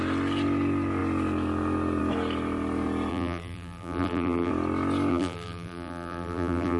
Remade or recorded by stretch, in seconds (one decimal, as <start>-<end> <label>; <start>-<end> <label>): 0.0-3.1 recorded; 3.1-4.5 remade; 4.5-5.1 recorded; 5.1-6.8 remade